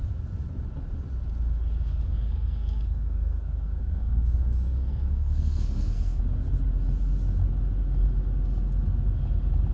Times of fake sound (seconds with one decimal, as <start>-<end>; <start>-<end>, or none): 1.9-6.2